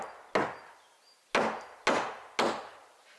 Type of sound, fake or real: real